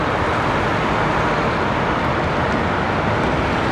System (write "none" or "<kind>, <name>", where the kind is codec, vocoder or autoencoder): none